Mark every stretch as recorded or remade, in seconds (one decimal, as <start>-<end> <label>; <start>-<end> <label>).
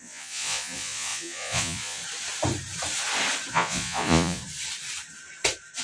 0.0-2.0 remade; 2.0-3.5 recorded; 3.5-4.4 remade; 4.4-5.8 recorded